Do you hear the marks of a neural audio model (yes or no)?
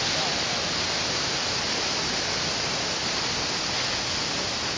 no